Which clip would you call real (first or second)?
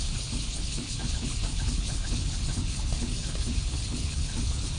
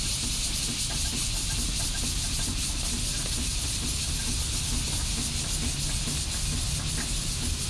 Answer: second